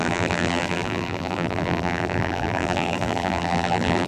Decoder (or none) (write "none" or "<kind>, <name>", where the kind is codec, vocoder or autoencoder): vocoder, BigVGAN v2